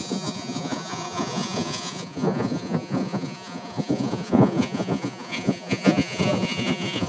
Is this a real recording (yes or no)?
no